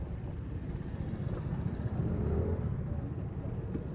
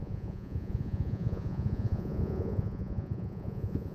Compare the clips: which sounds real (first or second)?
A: first